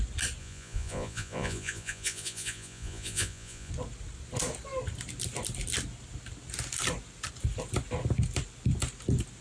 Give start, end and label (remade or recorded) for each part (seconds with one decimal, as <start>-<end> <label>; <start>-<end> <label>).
0.0-0.4 recorded; 0.4-3.7 remade; 3.7-9.4 recorded